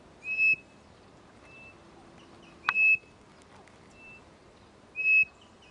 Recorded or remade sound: recorded